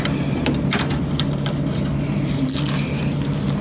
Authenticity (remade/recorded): recorded